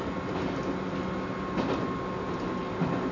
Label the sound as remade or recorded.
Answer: recorded